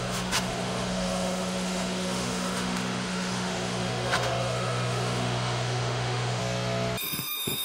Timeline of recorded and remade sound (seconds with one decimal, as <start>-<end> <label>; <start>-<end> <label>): 0.0-6.4 remade; 6.4-7.0 recorded; 7.0-7.6 remade